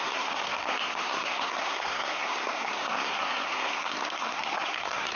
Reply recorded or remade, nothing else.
remade